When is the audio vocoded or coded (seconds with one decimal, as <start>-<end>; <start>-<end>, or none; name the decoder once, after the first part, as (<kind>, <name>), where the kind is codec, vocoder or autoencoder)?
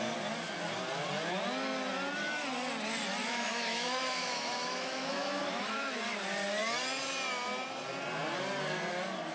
3.2-6.0 (autoencoder, DAC-VAE)